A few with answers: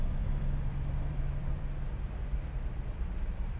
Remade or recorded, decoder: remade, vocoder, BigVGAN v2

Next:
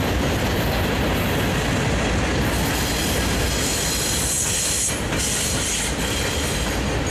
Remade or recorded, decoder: recorded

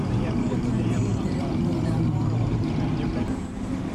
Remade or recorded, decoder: remade, vocoder, BigVGAN v2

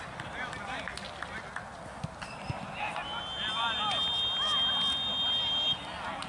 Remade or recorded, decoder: recorded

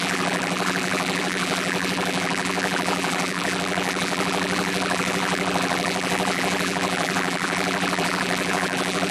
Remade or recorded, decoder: remade, vocoder, BigVGAN v2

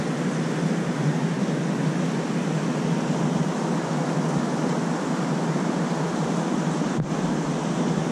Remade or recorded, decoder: recorded